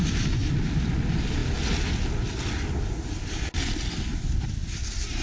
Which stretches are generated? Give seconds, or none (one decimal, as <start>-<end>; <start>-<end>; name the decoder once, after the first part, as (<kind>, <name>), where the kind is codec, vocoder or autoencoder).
0.4-0.9 (vocoder, BigVGAN v2)